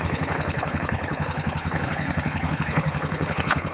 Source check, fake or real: fake